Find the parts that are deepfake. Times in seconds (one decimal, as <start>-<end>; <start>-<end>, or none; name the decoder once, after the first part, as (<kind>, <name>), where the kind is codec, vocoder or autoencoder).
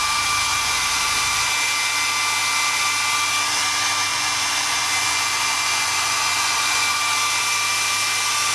0.5-1.5 (vocoder, Vocos); 4.1-7.0